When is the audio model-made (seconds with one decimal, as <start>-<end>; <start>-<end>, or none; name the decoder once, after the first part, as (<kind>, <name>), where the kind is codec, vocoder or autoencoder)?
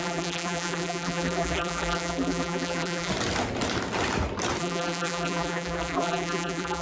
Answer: 0.0-3.1 (vocoder, BigVGAN v2); 4.6-6.8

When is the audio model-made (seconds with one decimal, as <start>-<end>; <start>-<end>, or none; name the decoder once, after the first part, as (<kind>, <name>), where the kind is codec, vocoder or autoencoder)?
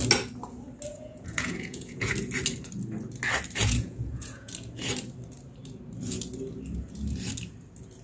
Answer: 0.9-2.1 (vocoder, Vocos); 3.6-4.5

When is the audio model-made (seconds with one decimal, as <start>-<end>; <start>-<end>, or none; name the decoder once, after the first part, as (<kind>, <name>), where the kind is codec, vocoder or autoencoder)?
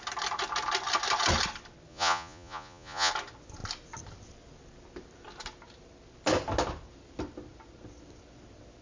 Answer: 1.9-3.1 (vocoder, Vocos)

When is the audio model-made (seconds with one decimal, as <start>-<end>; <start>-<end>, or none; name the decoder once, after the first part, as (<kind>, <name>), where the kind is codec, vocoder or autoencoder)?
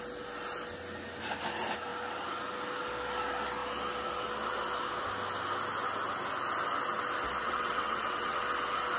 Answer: 7.4-8.4 (vocoder, WaveNeXt)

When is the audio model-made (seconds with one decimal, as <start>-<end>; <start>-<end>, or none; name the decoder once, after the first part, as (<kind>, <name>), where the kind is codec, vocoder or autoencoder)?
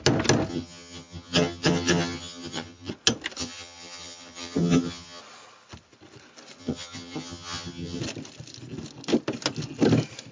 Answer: 0.5-2.9 (vocoder, HiFi-GAN); 3.4-5.2; 6.6-8.0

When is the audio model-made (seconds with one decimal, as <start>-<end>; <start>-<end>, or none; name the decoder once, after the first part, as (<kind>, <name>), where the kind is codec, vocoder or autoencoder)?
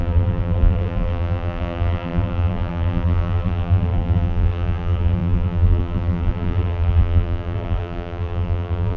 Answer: 0.0-9.0 (vocoder, BigVGAN v2)